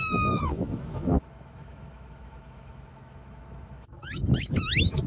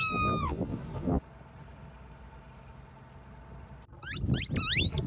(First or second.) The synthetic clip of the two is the first